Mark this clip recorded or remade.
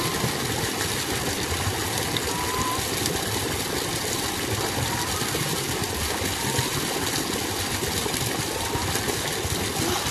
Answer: recorded